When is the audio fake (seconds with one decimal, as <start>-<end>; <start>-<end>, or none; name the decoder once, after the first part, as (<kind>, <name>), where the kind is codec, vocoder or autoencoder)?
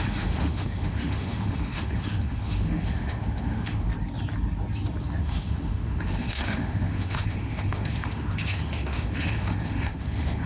0.0-3.9 (autoencoder, DAC-VAE); 5.2-10.5